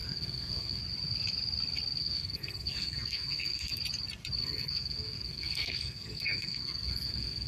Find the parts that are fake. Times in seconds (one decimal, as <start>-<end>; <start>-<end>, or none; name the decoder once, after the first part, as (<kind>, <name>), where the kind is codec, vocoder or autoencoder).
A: 0.0-0.8 (codec, SNAC); 2.0-3.8; 4.4-7.5